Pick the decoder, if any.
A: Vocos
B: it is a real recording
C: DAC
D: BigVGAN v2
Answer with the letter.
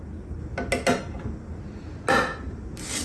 B